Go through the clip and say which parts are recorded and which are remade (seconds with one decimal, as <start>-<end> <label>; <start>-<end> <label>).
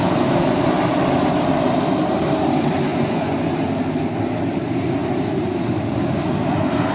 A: 0.0-2.9 recorded; 2.9-3.5 remade; 3.5-6.9 recorded